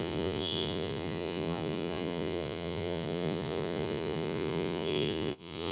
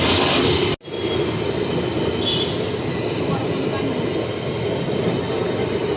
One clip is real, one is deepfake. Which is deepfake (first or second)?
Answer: first